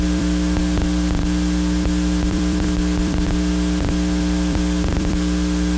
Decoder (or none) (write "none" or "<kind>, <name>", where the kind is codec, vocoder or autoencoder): vocoder, BigVGAN v2